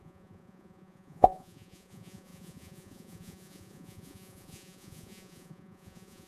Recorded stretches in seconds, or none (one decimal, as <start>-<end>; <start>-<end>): none